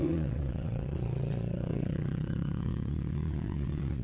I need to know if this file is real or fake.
fake